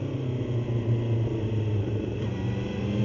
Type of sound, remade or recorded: recorded